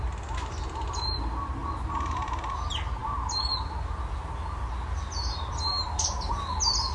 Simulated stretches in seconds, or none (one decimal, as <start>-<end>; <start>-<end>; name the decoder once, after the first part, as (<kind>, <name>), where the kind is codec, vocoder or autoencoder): none